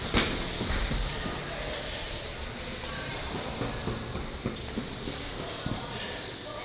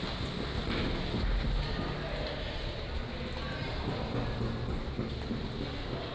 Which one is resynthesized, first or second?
first